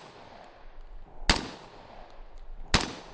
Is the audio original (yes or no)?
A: yes